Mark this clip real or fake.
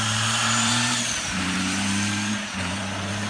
fake